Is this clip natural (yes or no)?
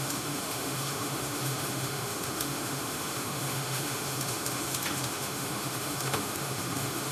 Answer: no